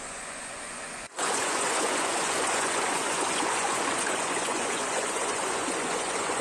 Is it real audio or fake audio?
fake